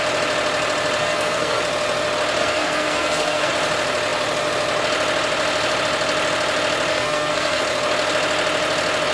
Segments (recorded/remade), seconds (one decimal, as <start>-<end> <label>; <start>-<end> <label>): 0.0-1.0 recorded; 1.0-1.6 remade; 1.6-2.4 recorded; 2.4-3.5 remade; 3.5-6.9 recorded; 6.9-7.6 remade; 7.6-9.1 recorded

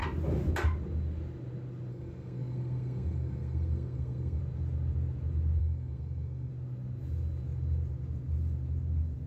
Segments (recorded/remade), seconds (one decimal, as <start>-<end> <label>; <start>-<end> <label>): 0.0-1.9 recorded; 1.9-4.4 remade; 4.4-5.6 recorded; 5.6-6.5 remade; 6.5-9.3 recorded

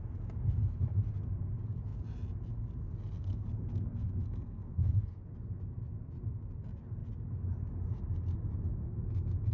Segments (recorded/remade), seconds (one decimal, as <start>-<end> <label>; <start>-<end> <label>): 0.0-3.2 recorded; 3.2-5.2 remade; 5.2-9.5 recorded

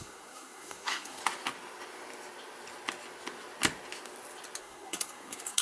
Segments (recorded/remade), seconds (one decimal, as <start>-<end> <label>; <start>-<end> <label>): 0.0-1.2 remade; 1.2-4.6 recorded; 4.6-5.6 remade

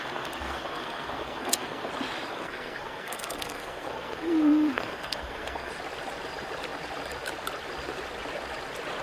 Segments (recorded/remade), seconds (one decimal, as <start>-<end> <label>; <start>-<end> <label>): 0.0-1.9 remade; 1.9-2.3 recorded; 2.3-5.7 remade; 5.7-9.0 recorded